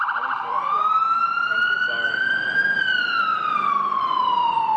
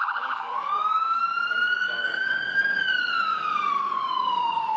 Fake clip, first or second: second